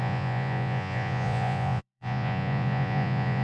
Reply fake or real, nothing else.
fake